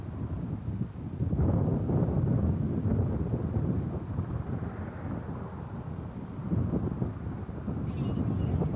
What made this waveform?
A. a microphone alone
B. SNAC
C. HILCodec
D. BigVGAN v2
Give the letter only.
A